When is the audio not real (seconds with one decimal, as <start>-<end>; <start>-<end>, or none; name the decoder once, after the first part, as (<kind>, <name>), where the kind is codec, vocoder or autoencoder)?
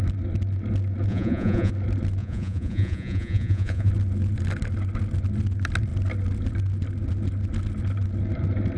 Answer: 1.1-1.7 (vocoder, Vocos); 2.2-3.9